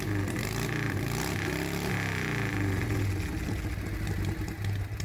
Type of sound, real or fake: real